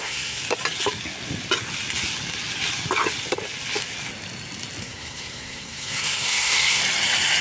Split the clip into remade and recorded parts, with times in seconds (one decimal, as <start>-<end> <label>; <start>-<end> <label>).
0.0-0.4 remade; 0.4-4.8 recorded; 4.8-6.8 remade; 6.8-7.4 recorded